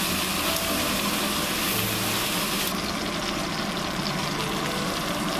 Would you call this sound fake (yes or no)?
no